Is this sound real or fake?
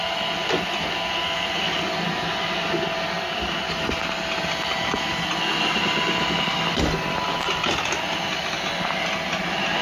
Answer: real